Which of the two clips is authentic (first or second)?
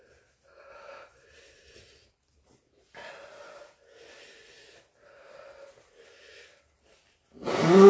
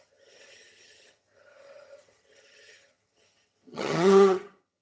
first